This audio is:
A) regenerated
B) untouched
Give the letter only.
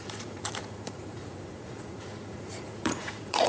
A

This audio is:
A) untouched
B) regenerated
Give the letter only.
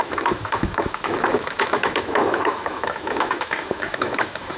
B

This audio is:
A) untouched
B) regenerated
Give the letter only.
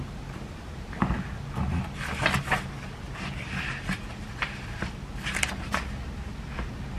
A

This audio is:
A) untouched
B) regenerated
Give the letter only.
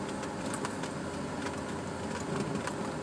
A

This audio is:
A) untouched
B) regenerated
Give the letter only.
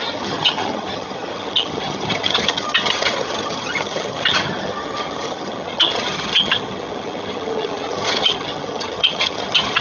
B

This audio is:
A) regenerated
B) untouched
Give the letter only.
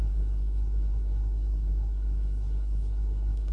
A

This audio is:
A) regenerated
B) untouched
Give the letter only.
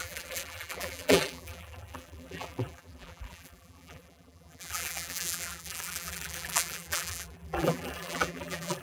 A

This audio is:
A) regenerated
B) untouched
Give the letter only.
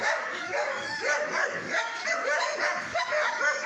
A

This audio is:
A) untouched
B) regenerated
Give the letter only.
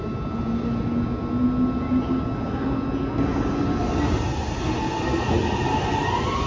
A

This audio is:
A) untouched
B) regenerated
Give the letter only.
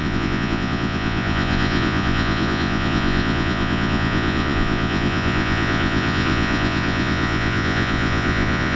B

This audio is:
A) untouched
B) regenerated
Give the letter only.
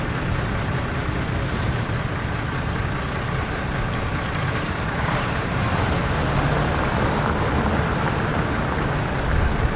A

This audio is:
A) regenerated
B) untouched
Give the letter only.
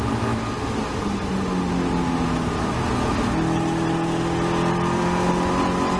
B